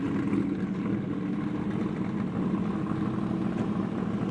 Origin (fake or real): real